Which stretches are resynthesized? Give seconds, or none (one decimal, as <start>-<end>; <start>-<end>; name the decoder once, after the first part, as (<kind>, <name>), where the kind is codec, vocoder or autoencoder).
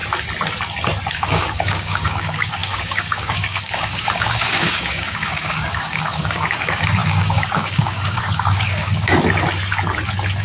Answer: 1.1-9.1 (codec, DAC)